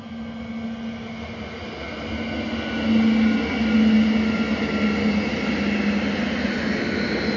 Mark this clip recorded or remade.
recorded